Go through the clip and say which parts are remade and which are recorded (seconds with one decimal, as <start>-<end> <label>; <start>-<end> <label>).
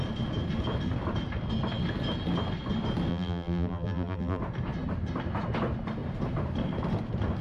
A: 0.0-3.1 recorded; 3.1-4.4 remade; 4.4-7.4 recorded